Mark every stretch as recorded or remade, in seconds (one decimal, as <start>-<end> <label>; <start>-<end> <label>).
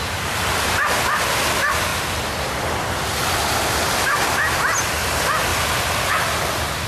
0.0-1.9 recorded; 1.9-3.3 remade; 3.3-5.5 recorded; 5.5-6.1 remade; 6.1-6.9 recorded